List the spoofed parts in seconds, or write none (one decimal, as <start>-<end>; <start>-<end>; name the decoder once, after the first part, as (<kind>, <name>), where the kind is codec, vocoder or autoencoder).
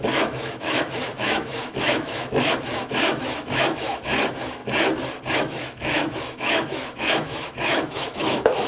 0.0-4.6 (autoencoder, DAC-VAE); 5.3-8.7